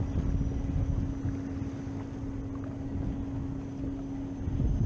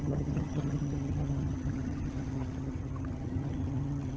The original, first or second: first